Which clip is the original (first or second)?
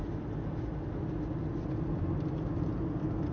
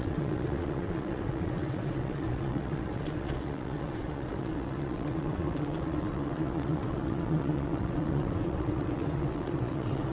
first